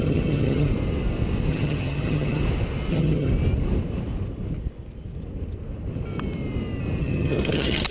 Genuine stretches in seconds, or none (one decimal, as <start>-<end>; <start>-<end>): 0.7-1.5; 2.4-2.9; 3.3-7.0